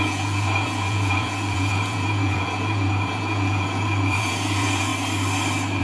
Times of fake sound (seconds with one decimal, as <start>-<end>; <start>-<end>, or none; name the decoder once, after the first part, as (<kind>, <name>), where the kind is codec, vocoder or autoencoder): 0.0-4.9 (vocoder, Vocos)